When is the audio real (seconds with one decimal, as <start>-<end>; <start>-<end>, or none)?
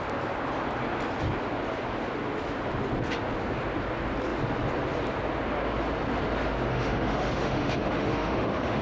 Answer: 0.0-6.7